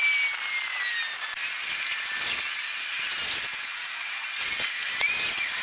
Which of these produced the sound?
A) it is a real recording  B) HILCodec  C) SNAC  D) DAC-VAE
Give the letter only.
A